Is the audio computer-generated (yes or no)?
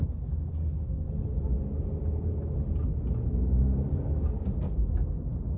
no